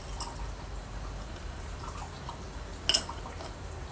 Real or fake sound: real